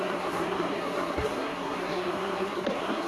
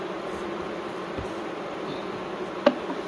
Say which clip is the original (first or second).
second